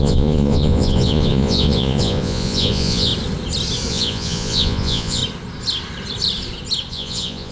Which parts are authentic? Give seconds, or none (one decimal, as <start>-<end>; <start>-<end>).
3.1-3.9; 5.2-6.9